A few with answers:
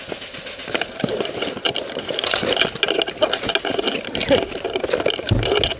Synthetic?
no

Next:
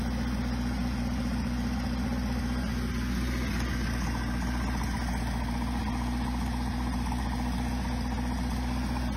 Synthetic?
no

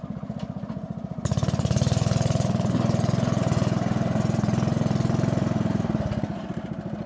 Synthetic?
no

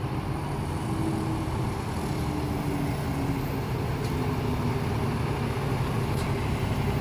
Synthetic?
no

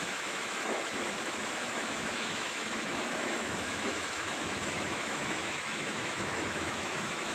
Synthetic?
yes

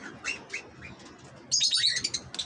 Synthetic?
no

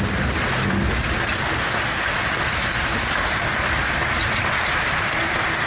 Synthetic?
no